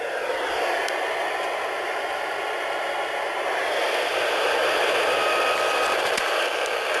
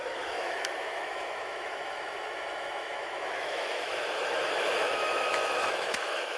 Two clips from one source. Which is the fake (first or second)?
second